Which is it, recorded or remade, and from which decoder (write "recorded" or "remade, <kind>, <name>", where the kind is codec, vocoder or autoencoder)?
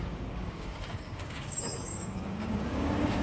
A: remade, codec, DAC